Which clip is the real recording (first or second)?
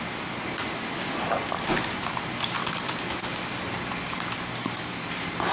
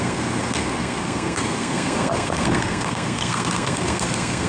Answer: first